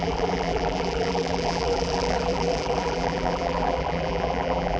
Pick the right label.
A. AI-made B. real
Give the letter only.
A